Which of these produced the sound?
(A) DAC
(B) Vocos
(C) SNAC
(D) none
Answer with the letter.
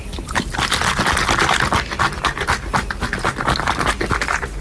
D